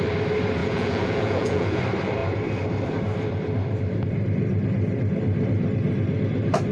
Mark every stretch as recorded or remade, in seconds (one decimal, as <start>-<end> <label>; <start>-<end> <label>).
0.0-0.6 recorded; 0.6-1.8 remade; 1.8-6.7 recorded